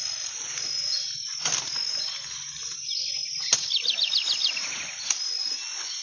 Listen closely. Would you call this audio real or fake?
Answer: real